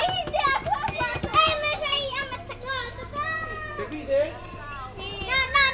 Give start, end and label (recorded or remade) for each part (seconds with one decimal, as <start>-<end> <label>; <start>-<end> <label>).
0.0-5.7 recorded